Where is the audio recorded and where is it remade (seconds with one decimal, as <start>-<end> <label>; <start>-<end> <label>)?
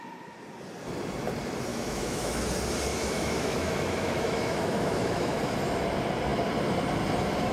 0.0-1.7 recorded; 1.7-2.5 remade; 2.5-2.9 recorded; 2.9-5.4 remade; 5.4-7.5 recorded